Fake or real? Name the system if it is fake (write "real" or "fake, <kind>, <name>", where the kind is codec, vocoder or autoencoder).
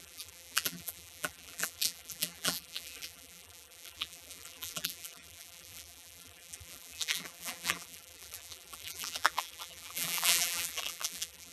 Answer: fake, vocoder, BigVGAN v2